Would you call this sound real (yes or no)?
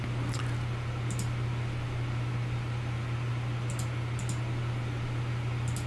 yes